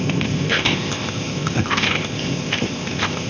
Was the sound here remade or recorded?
remade